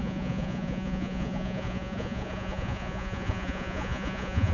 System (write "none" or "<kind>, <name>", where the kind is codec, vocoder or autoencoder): vocoder, Vocos